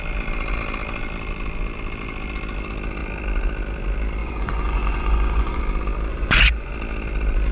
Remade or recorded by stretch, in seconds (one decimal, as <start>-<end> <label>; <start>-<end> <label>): 0.0-4.2 recorded; 4.2-5.6 remade; 5.6-6.1 recorded; 6.1-6.7 remade; 6.7-7.5 recorded